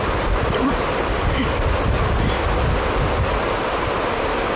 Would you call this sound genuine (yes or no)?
yes